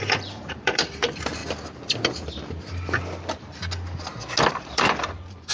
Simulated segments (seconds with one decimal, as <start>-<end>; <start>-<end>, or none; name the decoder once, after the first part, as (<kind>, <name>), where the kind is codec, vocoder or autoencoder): 0.0-1.4 (vocoder, BigVGAN v2); 4.5-5.5